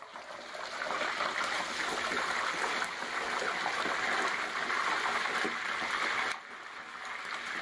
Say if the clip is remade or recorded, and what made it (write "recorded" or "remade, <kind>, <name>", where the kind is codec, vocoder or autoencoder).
recorded